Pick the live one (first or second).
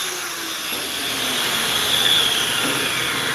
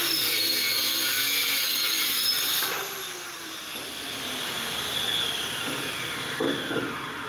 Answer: first